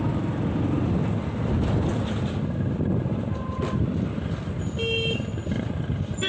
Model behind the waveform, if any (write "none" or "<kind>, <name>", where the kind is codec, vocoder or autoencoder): none